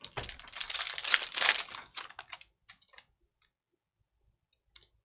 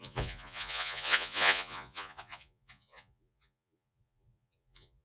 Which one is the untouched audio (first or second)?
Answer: first